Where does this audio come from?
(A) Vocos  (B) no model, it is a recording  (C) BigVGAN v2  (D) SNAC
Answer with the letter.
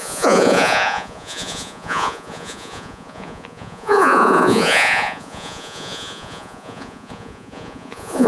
A